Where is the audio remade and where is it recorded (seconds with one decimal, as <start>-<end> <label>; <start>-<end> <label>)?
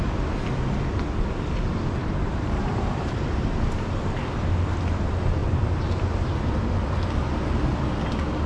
0.0-2.0 recorded; 2.0-4.2 remade; 4.2-5.4 recorded; 5.4-5.9 remade; 5.9-8.5 recorded